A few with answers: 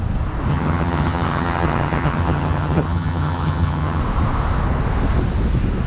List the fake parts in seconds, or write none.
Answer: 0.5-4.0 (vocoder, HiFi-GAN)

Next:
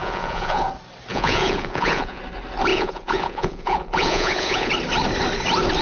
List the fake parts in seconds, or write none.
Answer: 0.0-0.7 (vocoder, Vocos); 1.1-2.2; 2.7-4.7

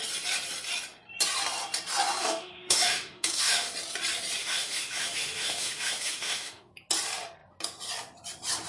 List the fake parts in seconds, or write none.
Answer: 2.2-3.7 (autoencoder, DAC-VAE); 4.4-6.7

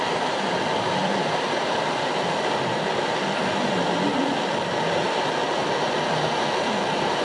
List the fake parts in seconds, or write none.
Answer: 1.0-3.1 (vocoder, BigVGAN v2)

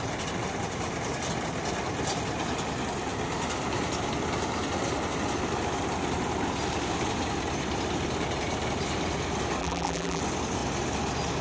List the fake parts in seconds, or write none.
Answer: 9.6-10.2 (vocoder, BigVGAN v2)

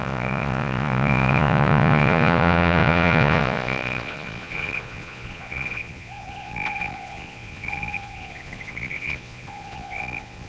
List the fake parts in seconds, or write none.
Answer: 0.0-10.5 (vocoder, Vocos)